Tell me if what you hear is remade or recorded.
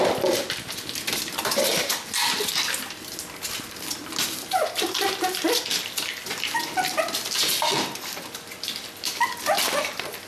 recorded